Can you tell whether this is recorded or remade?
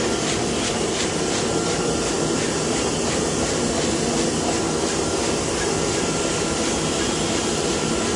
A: recorded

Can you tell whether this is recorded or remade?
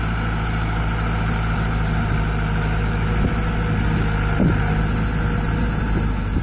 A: recorded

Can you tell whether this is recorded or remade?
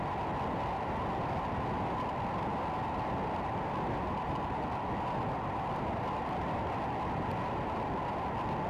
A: recorded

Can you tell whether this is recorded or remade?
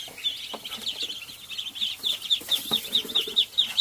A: recorded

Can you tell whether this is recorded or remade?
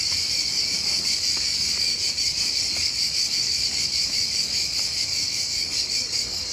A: remade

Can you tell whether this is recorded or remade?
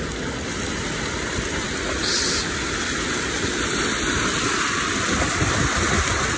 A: recorded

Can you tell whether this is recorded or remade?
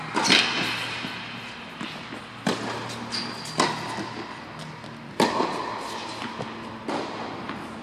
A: recorded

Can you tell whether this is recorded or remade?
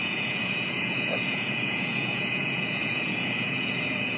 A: remade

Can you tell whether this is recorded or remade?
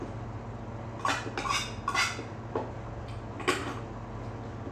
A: recorded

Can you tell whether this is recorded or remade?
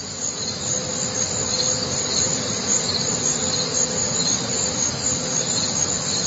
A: recorded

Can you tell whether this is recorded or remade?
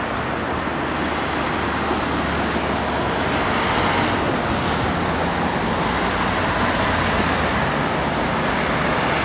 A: recorded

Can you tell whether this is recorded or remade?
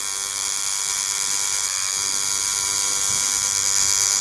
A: recorded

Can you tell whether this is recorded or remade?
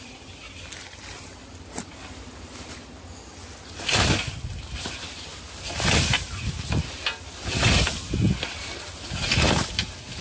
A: recorded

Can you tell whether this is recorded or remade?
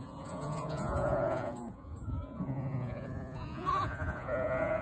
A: remade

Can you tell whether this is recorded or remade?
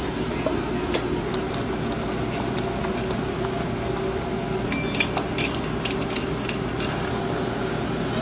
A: recorded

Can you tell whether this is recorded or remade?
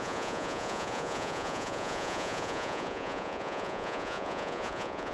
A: remade